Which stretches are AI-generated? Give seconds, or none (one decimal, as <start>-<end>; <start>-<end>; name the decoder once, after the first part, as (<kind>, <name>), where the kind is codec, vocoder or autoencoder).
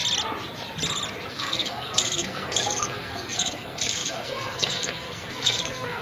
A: 1.3-6.0 (codec, SNAC)